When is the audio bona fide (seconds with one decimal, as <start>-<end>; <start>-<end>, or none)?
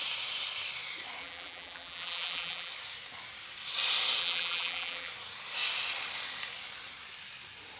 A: 0.0-1.2; 2.7-4.2; 5.1-7.8